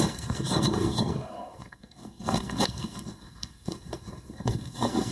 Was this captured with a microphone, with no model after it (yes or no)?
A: no